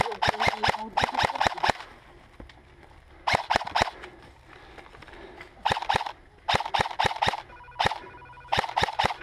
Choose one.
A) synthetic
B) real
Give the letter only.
B